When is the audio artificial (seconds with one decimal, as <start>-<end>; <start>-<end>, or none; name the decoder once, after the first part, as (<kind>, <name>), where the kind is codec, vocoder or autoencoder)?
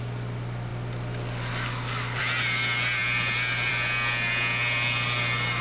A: none